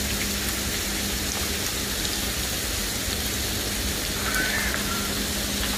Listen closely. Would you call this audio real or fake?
real